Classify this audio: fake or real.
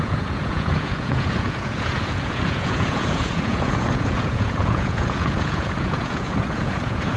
fake